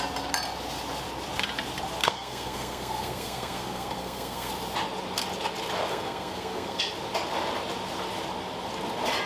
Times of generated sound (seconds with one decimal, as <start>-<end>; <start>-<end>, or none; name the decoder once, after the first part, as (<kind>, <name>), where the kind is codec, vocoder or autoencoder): 2.0-4.5 (codec, SNAC); 5.9-6.8